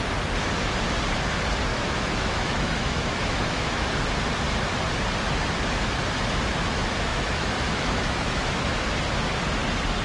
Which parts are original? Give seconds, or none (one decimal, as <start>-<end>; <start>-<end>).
0.0-1.7; 3.9-7.1; 8.6-10.0

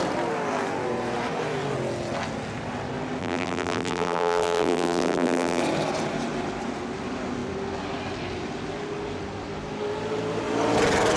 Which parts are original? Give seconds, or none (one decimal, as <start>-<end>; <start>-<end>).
0.0-3.2; 5.6-11.2

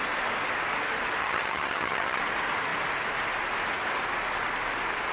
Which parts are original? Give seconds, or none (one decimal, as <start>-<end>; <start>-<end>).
0.0-1.2; 2.2-5.1

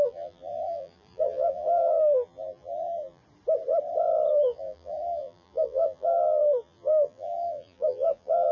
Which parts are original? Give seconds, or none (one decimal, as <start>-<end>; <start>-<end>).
3.2-4.3

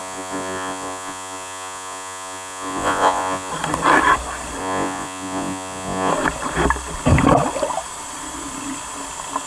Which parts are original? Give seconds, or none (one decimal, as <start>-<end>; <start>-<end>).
3.5-4.6; 6.1-9.5

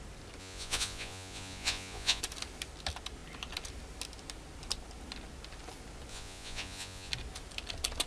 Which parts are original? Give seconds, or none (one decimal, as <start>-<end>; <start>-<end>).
0.0-0.4; 2.2-6.1; 7.1-8.1